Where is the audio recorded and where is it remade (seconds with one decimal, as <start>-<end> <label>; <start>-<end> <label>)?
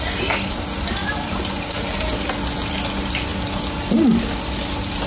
0.0-5.1 recorded